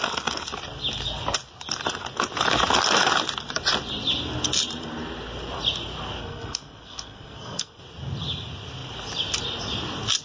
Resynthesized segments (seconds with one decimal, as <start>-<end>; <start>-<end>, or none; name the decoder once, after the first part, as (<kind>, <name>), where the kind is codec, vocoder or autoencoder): 6.2-7.8 (codec, SNAC)